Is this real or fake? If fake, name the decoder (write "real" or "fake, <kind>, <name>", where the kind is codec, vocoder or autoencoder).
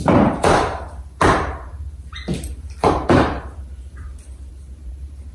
fake, vocoder, BigVGAN v2